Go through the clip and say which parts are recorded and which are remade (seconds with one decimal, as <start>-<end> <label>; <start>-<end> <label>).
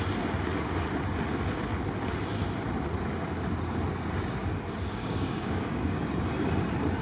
0.0-4.9 recorded; 4.9-6.0 remade; 6.0-7.0 recorded